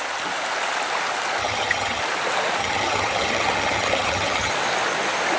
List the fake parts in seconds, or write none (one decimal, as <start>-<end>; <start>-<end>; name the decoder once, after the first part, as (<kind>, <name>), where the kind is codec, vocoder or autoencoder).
1.4-2.0 (vocoder, HiFi-GAN); 2.6-4.5